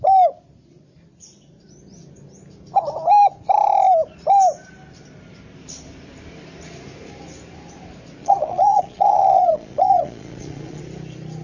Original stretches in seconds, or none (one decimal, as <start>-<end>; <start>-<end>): 0.0-8.2; 10.8-11.4